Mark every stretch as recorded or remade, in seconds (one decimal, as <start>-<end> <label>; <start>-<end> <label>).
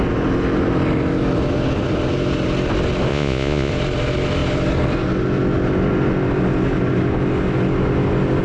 0.0-3.1 recorded; 3.1-3.7 remade; 3.7-8.4 recorded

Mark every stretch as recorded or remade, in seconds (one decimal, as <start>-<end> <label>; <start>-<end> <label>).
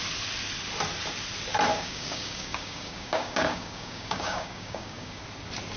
0.0-1.7 recorded; 1.7-5.2 remade; 5.2-5.8 recorded